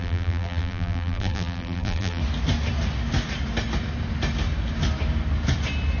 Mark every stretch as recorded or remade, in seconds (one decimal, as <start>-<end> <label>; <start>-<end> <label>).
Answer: 0.0-2.2 remade; 2.2-6.0 recorded